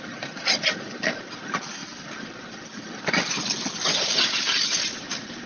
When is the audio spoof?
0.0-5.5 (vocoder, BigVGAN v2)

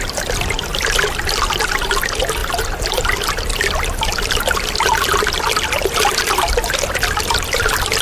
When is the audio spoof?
0.7-1.6 (vocoder, BigVGAN v2)

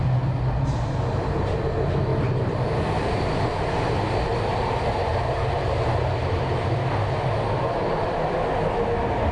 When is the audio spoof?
2.1-2.8 (vocoder, BigVGAN v2); 4.3-6.9

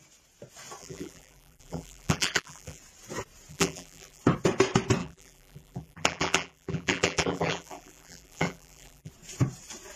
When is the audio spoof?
0.8-2.8 (vocoder, BigVGAN v2); 3.5-4.2; 5.0-9.1

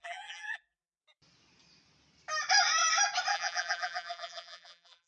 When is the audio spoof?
0.0-1.0 (vocoder, BigVGAN v2); 3.3-5.1

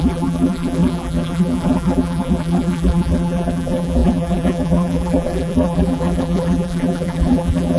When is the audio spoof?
0.0-7.8 (vocoder, BigVGAN v2)